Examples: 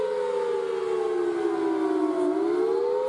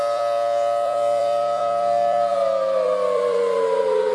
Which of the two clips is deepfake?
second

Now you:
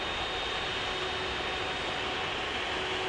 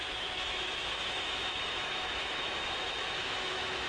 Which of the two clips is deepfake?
second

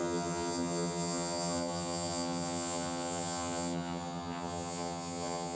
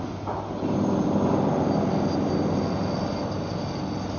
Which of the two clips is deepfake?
first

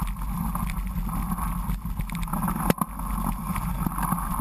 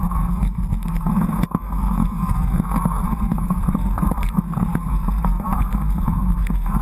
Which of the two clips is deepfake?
second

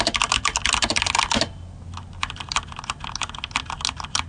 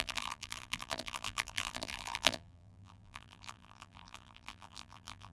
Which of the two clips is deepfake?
second